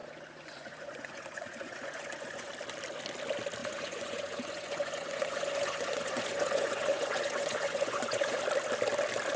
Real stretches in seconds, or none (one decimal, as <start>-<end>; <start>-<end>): 2.5-3.6; 8.4-9.4